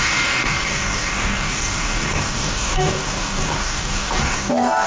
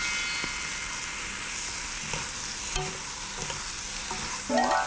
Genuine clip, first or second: second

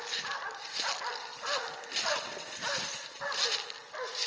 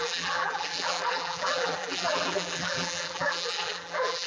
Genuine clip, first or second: first